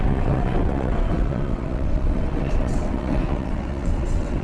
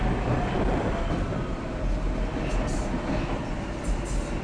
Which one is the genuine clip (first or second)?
second